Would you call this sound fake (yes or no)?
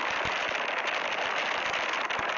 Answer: no